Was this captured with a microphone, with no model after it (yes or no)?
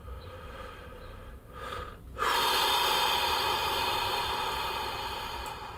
yes